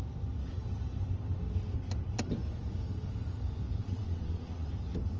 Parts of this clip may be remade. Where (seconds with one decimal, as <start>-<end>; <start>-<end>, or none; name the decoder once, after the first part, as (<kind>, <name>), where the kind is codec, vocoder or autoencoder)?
3.8-4.7 (vocoder, WaveNeXt)